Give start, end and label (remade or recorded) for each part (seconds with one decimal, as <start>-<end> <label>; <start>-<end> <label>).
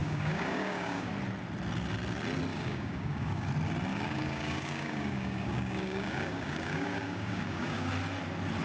0.0-1.1 remade; 1.1-2.5 recorded; 2.5-3.5 remade; 3.5-3.9 recorded; 3.9-7.9 remade; 7.9-8.6 recorded